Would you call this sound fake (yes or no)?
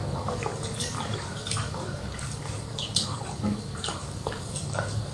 yes